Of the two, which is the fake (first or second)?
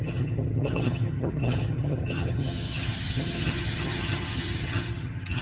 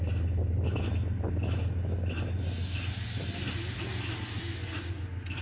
first